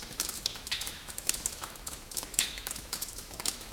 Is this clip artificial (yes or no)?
yes